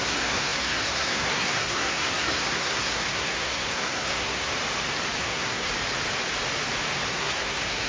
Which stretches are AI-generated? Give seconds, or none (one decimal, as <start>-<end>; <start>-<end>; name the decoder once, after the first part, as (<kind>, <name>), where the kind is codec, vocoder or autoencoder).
0.0-4.5 (codec, SNAC); 5.2-5.7; 7.1-7.9